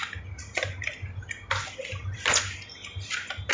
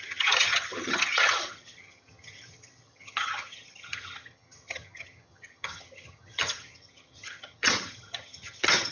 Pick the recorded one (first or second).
first